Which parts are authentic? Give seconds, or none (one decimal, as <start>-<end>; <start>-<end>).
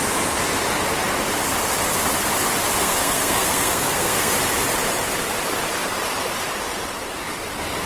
0.0-2.8; 4.3-7.9